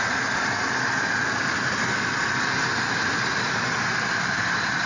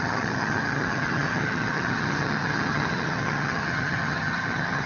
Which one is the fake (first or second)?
second